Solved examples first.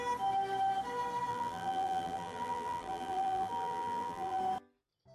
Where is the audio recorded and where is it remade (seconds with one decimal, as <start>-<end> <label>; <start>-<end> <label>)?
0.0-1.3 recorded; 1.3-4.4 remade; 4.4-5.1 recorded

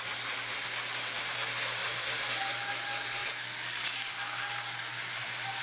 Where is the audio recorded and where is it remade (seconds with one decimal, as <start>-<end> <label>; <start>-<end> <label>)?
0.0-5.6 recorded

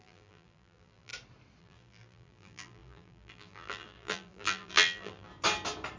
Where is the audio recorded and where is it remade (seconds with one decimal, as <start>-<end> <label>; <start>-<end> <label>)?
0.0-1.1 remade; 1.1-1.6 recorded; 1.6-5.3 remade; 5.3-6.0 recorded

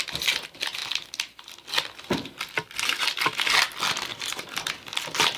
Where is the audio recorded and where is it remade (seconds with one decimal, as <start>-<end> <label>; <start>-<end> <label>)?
0.0-4.1 recorded; 4.1-4.7 remade; 4.7-5.4 recorded

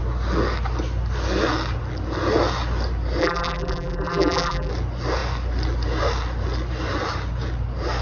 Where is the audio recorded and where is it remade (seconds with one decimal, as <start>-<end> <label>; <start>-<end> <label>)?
0.0-3.2 recorded; 3.2-4.7 remade; 4.7-8.0 recorded

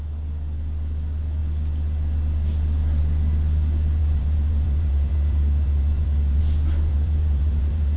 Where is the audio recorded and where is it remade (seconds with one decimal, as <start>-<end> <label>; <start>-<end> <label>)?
0.0-4.0 recorded; 4.0-6.4 remade; 6.4-6.9 recorded; 6.9-8.0 remade